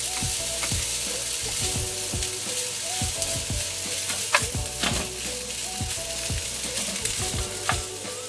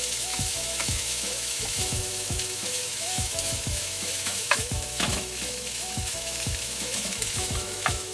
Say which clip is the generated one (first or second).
second